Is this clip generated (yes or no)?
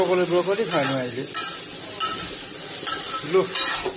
no